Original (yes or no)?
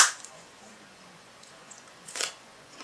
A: no